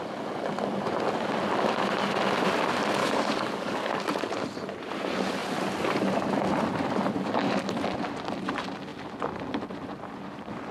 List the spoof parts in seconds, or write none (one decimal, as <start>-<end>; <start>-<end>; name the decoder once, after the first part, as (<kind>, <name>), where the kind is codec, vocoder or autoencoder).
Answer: 3.0-4.0 (codec, DAC)